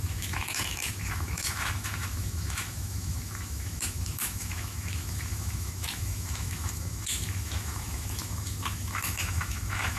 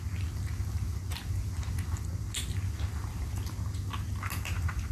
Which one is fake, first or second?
first